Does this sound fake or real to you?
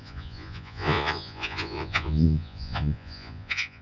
fake